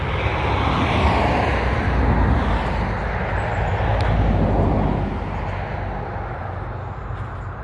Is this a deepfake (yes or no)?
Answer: no